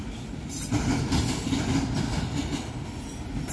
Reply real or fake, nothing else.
real